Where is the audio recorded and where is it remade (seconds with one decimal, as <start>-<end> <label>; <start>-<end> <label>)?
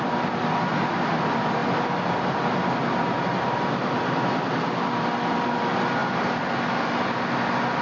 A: 0.0-7.8 recorded